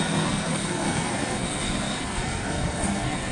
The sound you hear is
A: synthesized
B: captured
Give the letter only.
A